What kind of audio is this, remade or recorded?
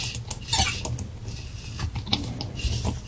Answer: recorded